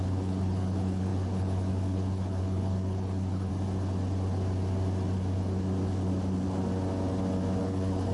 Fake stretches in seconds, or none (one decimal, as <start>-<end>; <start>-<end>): 0.0-3.5; 7.6-8.1